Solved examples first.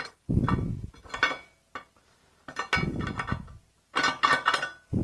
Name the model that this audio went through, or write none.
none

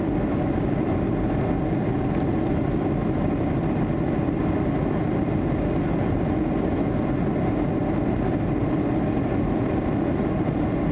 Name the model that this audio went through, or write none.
none